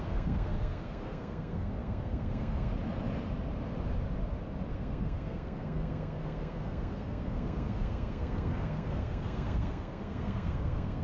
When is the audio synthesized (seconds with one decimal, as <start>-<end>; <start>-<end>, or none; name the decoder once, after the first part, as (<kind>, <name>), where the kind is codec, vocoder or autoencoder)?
0.0-2.7 (codec, SNAC); 4.7-11.0